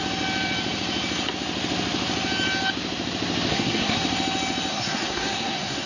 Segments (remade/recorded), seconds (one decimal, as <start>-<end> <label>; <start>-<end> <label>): 0.0-3.5 recorded; 3.5-4.0 remade; 4.0-4.7 recorded; 4.7-5.9 remade